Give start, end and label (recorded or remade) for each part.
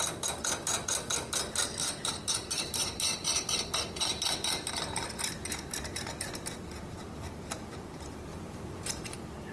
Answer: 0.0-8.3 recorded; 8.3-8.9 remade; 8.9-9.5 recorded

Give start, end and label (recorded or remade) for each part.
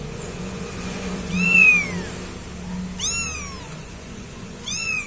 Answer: 0.0-1.7 remade; 1.7-3.6 recorded; 3.6-5.1 remade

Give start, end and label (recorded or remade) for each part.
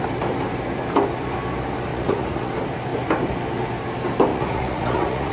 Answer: 0.0-1.9 recorded; 1.9-2.5 remade; 2.5-4.3 recorded; 4.3-5.3 remade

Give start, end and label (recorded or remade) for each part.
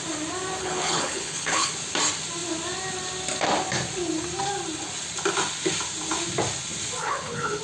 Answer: 0.0-0.6 recorded; 0.6-1.7 remade; 1.7-7.0 recorded; 7.0-7.6 remade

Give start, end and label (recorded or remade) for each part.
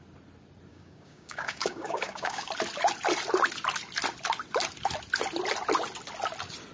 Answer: 0.0-0.7 recorded; 0.7-2.5 remade; 2.5-6.7 recorded